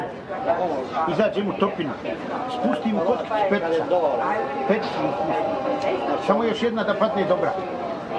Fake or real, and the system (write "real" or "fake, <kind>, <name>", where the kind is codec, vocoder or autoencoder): real